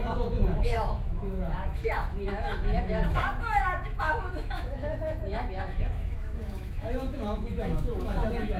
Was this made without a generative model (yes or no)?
no